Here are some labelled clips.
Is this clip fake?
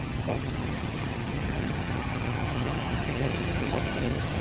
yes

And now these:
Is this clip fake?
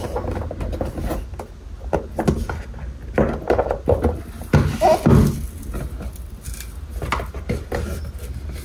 no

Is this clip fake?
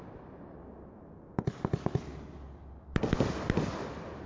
no